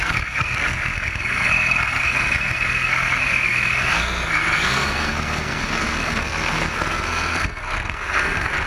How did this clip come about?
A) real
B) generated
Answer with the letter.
B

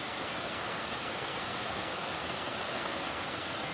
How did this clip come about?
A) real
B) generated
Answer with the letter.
B